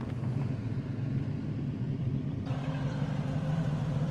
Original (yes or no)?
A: no